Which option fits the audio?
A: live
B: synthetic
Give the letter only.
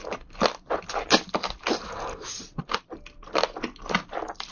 A